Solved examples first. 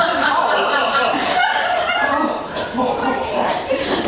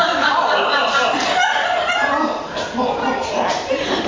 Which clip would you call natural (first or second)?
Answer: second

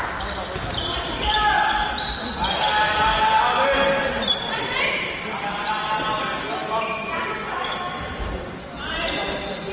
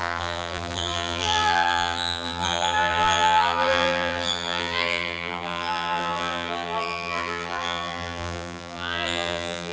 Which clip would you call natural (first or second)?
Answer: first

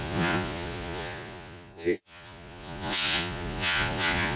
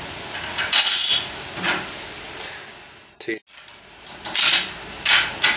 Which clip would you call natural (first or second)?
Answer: second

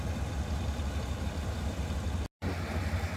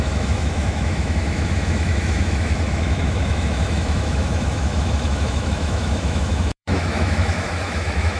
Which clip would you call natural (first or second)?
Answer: first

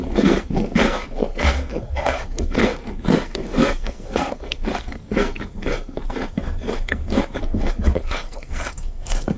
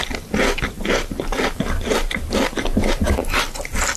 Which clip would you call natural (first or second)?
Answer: second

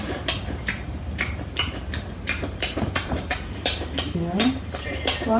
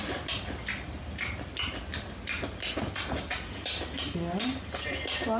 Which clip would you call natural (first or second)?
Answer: second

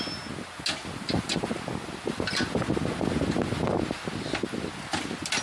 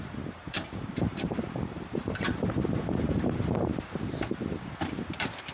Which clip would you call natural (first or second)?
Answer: first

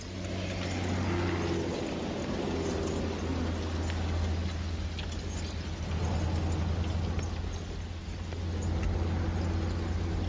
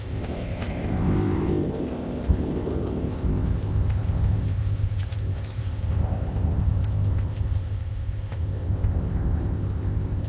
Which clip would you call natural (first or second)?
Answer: first